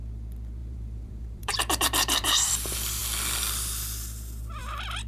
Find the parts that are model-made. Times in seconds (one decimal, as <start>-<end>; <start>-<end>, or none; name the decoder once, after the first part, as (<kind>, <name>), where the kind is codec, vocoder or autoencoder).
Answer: 0.6-2.5 (vocoder, BigVGAN v2)